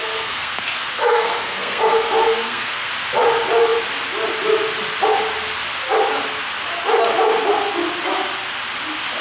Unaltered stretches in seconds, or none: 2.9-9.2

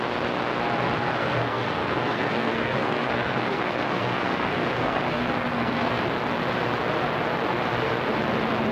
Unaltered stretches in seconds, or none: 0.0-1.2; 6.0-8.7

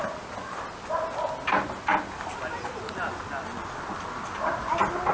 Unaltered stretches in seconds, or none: 0.0-5.1

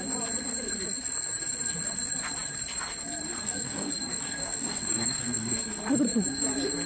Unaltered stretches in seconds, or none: 0.0-3.5; 5.6-6.9

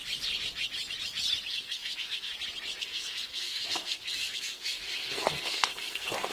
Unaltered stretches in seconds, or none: 0.0-1.5; 2.3-2.8

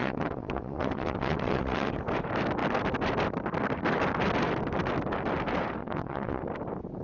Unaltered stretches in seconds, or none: 1.9-5.8; 6.4-7.0

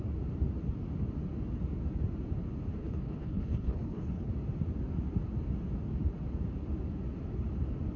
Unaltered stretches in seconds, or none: 0.0-2.8; 4.3-8.0